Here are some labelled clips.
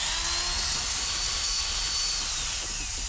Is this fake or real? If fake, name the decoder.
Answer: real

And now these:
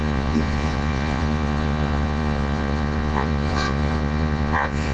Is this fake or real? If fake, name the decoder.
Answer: fake, vocoder, Vocos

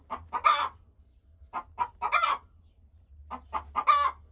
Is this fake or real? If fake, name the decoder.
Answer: real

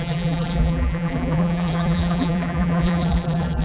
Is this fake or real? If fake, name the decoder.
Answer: fake, vocoder, BigVGAN v2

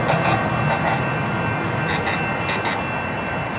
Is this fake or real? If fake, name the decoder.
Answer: real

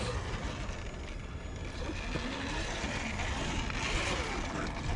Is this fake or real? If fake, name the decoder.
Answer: real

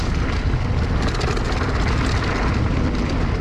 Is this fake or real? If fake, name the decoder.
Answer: real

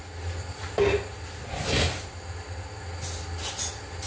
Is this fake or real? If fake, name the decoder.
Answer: real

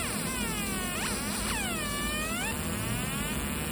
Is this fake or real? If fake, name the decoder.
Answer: real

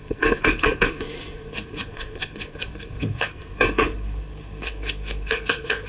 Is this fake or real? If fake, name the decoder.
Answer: fake, codec, SNAC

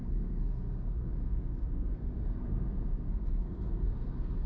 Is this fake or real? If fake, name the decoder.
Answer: fake, codec, SNAC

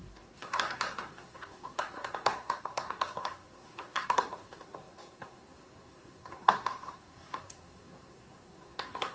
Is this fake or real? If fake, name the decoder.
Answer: fake, codec, SNAC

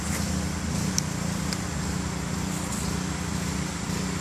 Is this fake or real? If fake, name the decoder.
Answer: fake, vocoder, BigVGAN v2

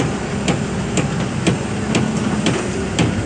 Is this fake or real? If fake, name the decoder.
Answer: real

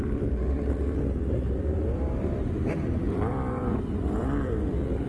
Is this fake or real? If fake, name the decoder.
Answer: fake, vocoder, BigVGAN v2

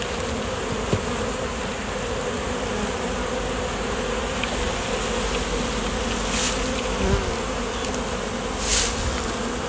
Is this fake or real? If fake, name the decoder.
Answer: real